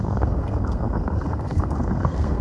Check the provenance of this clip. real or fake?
fake